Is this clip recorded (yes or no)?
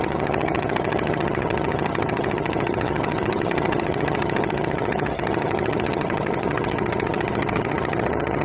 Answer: no